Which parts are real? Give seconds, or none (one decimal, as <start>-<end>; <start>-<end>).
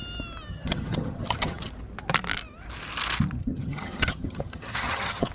0.0-0.5; 1.7-3.4